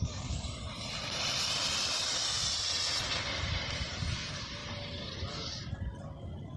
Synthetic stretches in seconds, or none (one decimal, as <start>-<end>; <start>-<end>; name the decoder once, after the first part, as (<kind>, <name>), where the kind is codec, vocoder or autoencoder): 0.0-2.2 (vocoder, BigVGAN v2); 3.0-6.6